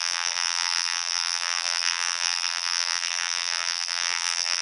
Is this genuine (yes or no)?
no